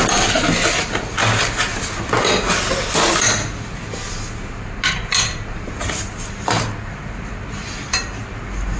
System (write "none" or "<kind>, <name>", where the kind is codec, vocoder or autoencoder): none